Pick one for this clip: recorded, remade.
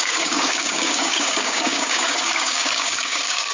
remade